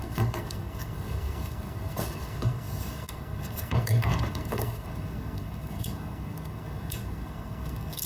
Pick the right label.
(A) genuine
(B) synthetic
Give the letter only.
B